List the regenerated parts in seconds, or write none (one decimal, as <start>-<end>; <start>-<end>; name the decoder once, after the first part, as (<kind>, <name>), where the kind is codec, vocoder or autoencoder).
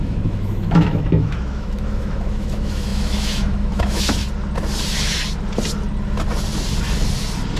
0.0-4.2 (autoencoder, DAC-VAE)